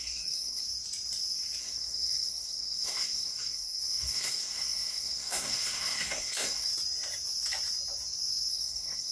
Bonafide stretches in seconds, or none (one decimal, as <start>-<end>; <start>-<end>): 0.6-1.6; 6.7-8.5